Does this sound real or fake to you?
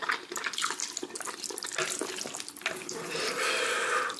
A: real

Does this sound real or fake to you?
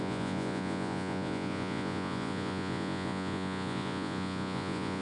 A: fake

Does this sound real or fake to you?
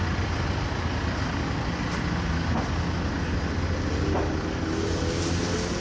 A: real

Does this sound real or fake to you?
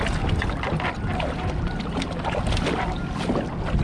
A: real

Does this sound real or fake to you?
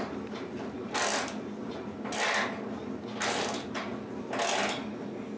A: real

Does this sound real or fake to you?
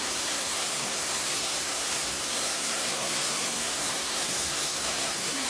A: fake